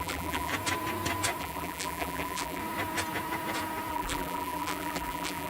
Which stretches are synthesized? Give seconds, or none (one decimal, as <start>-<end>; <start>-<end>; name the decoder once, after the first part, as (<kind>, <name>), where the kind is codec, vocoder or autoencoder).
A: 0.0-0.5 (vocoder, BigVGAN v2); 1.4-2.6; 3.9-5.5